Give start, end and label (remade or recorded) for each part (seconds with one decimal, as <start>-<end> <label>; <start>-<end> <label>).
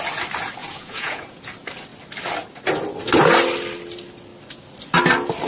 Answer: 0.0-0.6 recorded; 0.6-1.4 remade; 1.4-5.5 recorded